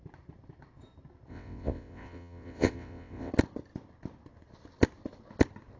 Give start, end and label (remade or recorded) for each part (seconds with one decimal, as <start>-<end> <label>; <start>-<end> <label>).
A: 0.0-1.3 recorded; 1.3-3.3 remade; 3.3-5.8 recorded